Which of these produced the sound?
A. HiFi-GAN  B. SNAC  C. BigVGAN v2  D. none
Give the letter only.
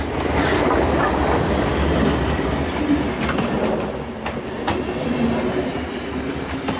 D